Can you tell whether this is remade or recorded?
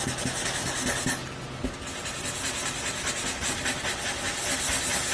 recorded